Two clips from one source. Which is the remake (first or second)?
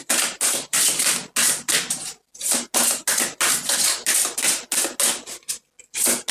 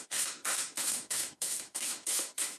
second